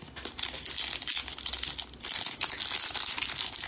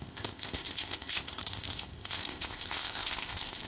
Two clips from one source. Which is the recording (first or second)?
first